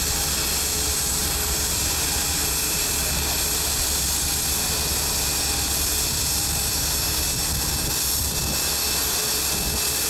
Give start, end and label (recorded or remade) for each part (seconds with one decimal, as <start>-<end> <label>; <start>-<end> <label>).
0.0-1.2 recorded; 1.2-2.9 remade; 2.9-10.1 recorded